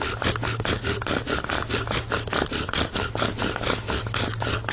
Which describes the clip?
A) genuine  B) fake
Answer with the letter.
A